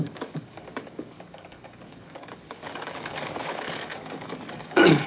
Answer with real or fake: fake